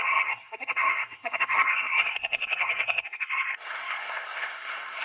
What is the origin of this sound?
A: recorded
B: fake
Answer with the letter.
B